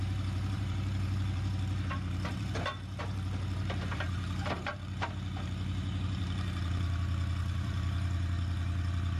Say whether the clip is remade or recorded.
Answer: remade